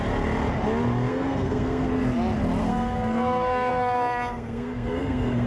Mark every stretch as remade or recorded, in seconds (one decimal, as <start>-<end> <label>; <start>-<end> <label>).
0.0-1.1 recorded; 1.1-1.9 remade; 1.9-2.6 recorded; 2.6-5.5 remade